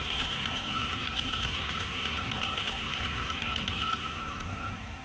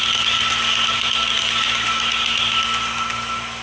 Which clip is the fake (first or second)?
first